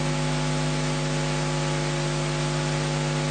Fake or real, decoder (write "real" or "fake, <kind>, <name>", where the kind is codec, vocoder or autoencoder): real